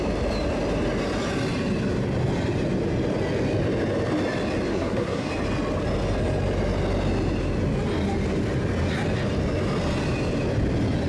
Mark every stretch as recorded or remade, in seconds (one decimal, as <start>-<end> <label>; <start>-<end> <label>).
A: 0.0-4.7 recorded; 4.7-5.3 remade; 5.3-11.1 recorded